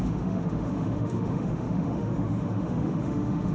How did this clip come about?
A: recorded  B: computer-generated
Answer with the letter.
B